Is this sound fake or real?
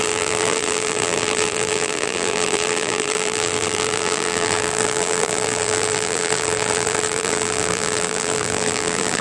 fake